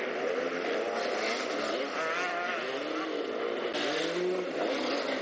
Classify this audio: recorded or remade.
recorded